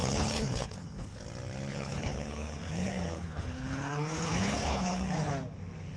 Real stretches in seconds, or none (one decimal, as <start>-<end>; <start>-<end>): 1.2-1.7; 5.3-6.0